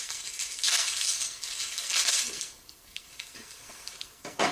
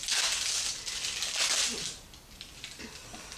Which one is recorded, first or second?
second